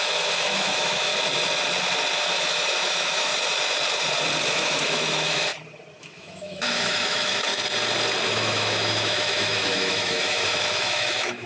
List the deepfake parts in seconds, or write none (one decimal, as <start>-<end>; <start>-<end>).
0.0-1.1; 2.2-3.3; 4.5-5.5; 6.0-7.5; 8.3-11.5